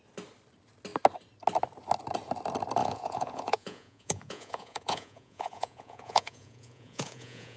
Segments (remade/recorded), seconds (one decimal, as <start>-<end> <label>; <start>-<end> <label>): 0.0-2.8 recorded; 2.8-7.6 remade